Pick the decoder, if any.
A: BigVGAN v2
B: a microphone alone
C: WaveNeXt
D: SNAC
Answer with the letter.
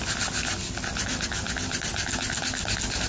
B